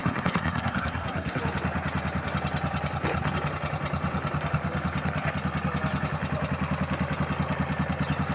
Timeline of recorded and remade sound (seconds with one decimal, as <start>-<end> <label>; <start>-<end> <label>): 0.0-1.4 remade; 1.4-8.3 recorded